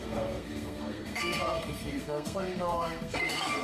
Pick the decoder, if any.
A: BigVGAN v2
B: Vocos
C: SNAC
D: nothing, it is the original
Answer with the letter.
C